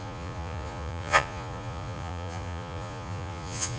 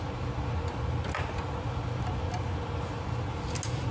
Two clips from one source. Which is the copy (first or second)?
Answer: first